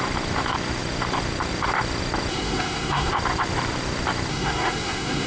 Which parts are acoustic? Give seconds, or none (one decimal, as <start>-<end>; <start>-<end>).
0.0-2.3; 3.1-4.3